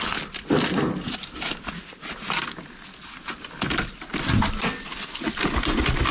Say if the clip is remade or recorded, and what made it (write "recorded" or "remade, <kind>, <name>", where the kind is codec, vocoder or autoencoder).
recorded